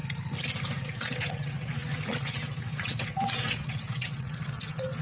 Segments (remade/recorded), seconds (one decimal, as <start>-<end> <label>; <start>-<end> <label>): 0.0-0.8 recorded; 0.8-5.0 remade